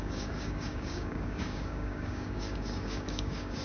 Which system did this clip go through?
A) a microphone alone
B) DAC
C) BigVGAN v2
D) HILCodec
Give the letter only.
B